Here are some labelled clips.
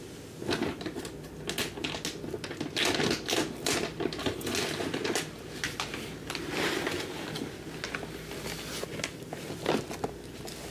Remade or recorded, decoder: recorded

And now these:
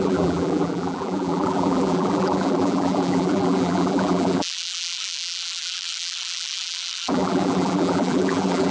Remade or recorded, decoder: remade, vocoder, BigVGAN v2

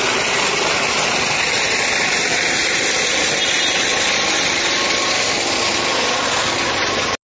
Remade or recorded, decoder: recorded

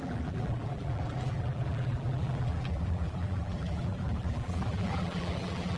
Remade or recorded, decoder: remade, vocoder, BigVGAN v2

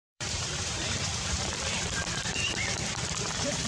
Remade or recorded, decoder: remade, vocoder, BigVGAN v2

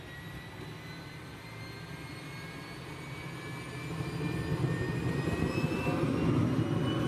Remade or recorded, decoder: recorded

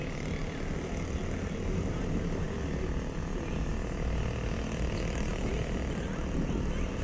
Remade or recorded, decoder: recorded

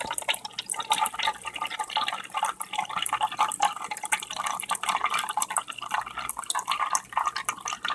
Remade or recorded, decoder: recorded